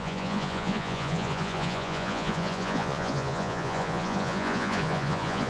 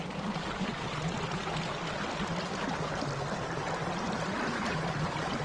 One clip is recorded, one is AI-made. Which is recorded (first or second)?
second